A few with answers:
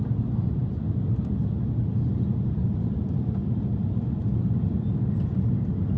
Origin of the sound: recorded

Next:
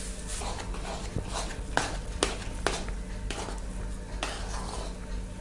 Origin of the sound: recorded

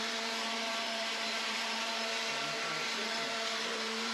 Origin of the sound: remade